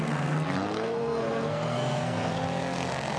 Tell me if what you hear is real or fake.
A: fake